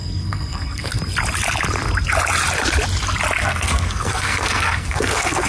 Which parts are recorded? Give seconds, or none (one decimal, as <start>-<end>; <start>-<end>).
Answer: 1.0-3.4